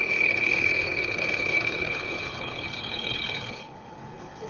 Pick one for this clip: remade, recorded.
remade